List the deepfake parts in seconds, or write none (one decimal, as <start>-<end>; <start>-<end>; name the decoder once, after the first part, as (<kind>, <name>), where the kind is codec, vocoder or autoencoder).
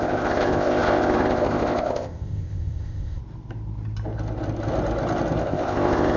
0.0-3.2 (codec, ZipCodec); 5.4-6.2